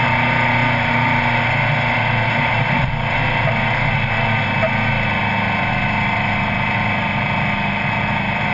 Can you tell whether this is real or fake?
real